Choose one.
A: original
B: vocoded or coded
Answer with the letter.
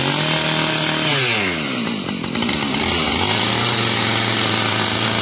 A